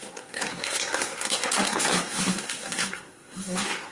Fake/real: fake